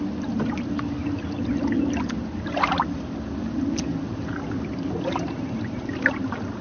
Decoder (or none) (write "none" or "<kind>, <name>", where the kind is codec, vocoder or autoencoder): none